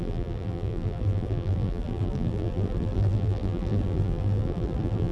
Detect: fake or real fake